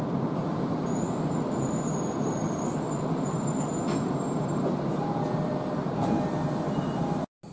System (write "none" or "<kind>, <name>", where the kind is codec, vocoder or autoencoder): none